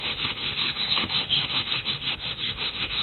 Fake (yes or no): yes